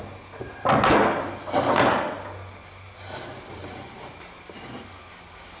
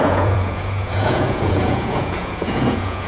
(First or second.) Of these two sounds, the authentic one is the first